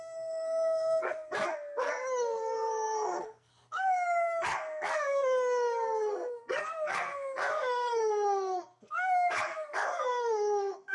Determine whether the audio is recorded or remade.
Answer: remade